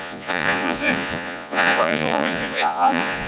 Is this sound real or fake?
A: fake